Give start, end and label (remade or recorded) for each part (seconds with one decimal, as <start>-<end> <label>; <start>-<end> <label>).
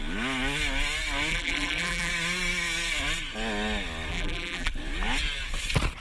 0.0-1.3 recorded; 1.3-2.1 remade; 2.1-4.1 recorded; 4.1-4.7 remade; 4.7-6.0 recorded